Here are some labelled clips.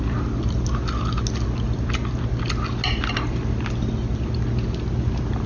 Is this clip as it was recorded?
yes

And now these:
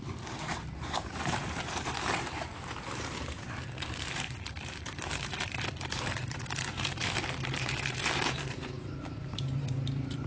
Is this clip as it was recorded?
no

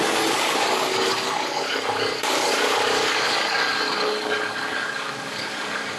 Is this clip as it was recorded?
no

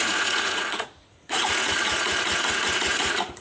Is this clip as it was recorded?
no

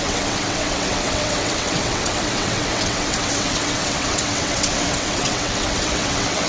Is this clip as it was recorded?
no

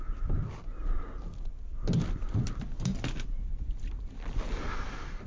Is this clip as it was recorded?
yes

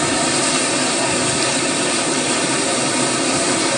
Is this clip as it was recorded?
yes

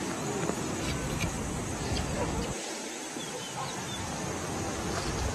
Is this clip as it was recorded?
yes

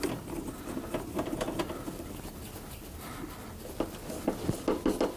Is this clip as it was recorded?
yes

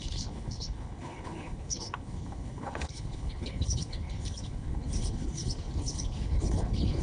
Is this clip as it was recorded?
no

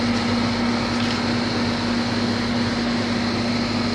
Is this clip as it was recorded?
yes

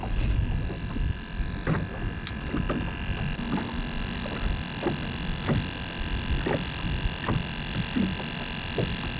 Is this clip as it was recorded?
yes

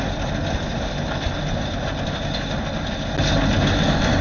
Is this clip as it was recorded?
yes